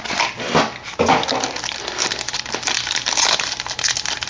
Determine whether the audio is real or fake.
real